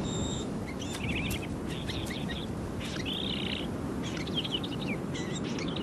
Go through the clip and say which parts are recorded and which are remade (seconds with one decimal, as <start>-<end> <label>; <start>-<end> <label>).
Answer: 0.0-0.6 remade; 0.6-5.8 recorded